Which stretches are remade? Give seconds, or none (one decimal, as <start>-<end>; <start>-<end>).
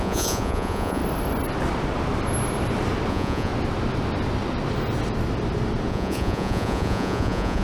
0.0-1.0; 3.1-3.5; 5.9-7.6